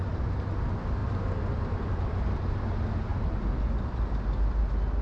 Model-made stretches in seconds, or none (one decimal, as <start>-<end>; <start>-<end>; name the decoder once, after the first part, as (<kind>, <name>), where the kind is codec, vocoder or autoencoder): 3.1-5.0 (vocoder, BigVGAN v2)